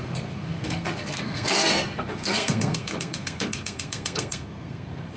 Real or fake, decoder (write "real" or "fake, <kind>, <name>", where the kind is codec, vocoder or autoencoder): fake, codec, SNAC